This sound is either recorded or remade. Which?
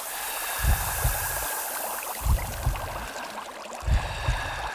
recorded